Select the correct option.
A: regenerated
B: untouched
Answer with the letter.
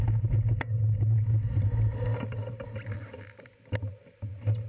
B